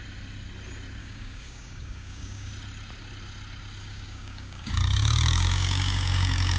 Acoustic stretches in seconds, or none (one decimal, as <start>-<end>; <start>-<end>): 0.0-1.0; 2.5-3.8